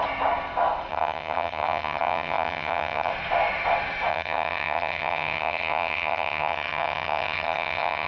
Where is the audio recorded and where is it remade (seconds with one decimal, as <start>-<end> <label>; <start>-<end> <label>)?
0.0-0.9 recorded; 0.9-3.1 remade; 3.1-4.1 recorded; 4.1-8.1 remade